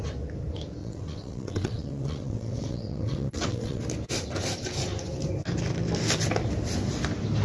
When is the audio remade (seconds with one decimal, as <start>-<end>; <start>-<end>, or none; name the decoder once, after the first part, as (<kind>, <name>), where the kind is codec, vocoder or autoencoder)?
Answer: 0.8-3.8 (vocoder, WaveNeXt)